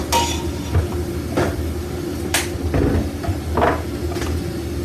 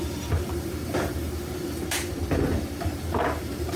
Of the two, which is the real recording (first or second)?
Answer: first